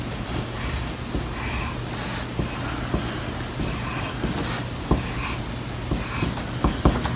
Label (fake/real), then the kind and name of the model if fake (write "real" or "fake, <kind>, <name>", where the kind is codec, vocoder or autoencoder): real